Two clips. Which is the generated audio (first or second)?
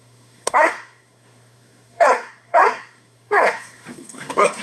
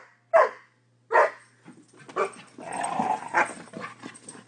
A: first